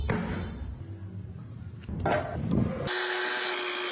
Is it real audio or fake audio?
real